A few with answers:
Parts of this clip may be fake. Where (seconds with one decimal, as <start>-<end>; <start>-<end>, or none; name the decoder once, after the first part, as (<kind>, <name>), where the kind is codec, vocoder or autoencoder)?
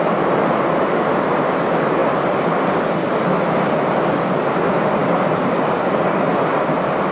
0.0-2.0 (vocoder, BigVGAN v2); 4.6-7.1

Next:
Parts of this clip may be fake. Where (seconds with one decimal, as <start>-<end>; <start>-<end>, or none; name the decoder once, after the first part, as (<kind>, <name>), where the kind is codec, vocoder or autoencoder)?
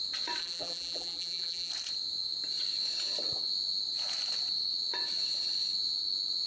0.4-1.7 (vocoder, BigVGAN v2)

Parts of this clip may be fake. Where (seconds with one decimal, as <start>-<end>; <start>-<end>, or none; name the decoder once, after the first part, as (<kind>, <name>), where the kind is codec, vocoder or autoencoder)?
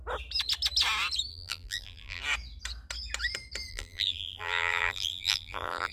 1.3-2.2 (vocoder, BigVGAN v2); 3.7-5.9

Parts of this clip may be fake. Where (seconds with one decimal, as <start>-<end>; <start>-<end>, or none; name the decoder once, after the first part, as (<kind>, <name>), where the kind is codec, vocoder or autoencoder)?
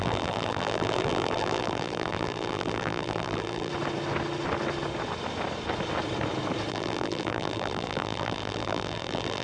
0.0-3.7 (vocoder, BigVGAN v2); 6.7-9.4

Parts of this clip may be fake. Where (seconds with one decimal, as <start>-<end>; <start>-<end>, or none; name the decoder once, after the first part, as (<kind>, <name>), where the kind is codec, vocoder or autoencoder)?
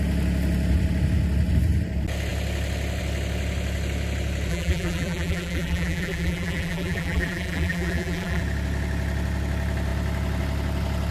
4.5-8.4 (vocoder, BigVGAN v2)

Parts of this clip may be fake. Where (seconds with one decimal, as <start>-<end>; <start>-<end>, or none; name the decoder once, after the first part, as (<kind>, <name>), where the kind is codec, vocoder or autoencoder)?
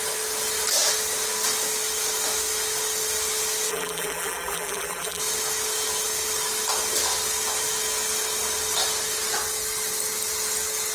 3.7-5.2 (vocoder, BigVGAN v2)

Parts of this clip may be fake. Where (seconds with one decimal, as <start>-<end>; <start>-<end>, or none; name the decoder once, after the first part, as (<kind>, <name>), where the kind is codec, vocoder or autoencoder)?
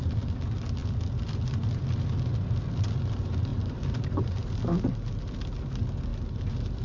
3.5-4.5 (vocoder, BigVGAN v2); 6.1-6.8